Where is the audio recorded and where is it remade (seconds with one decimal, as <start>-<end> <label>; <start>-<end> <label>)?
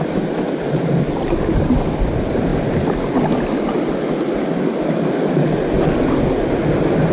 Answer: 0.0-7.1 recorded